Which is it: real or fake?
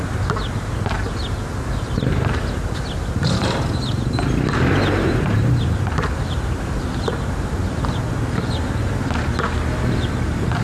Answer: real